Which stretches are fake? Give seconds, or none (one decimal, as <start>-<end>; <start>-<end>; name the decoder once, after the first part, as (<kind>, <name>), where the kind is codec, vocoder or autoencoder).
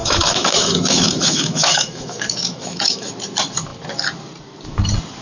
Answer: 0.0-3.1 (autoencoder, DAC-VAE)